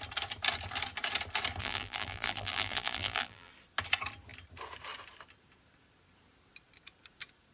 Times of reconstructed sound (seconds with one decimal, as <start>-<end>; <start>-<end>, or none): 1.6-3.5